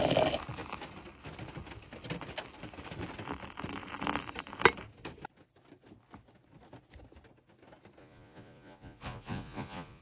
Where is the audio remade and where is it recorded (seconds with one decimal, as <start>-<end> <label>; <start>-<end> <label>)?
0.0-8.0 recorded; 8.0-10.0 remade